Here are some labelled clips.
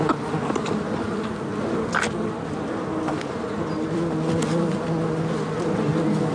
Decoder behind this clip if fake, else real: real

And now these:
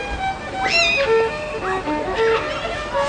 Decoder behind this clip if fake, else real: real